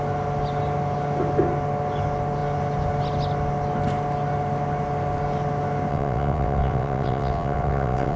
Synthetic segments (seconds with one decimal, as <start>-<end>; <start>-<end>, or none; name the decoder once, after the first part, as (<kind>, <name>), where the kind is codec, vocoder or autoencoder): 5.9-8.2 (vocoder, WaveNeXt)